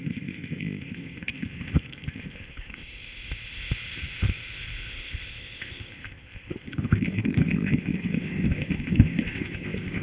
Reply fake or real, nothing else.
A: fake